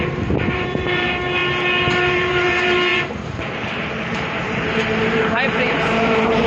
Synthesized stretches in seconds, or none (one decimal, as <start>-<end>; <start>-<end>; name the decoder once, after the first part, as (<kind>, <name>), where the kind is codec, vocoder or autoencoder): 0.0-1.4 (vocoder, BigVGAN v2); 1.9-6.5